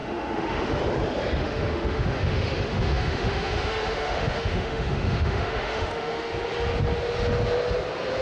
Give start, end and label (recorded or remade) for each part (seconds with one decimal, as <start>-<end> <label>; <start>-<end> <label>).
0.0-0.8 remade; 0.8-1.4 recorded; 1.4-6.3 remade; 6.3-8.2 recorded